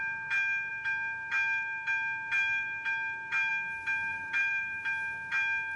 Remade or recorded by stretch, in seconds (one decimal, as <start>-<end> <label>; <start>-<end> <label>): 0.0-4.1 recorded; 4.1-4.8 remade; 4.8-5.8 recorded